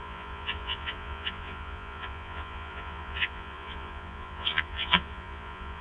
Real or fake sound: fake